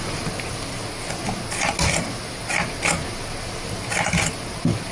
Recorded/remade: recorded